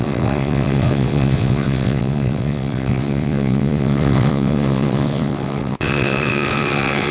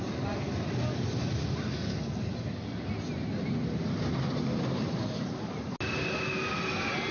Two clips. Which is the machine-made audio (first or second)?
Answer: first